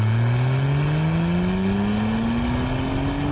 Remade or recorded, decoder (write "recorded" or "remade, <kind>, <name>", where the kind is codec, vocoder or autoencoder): recorded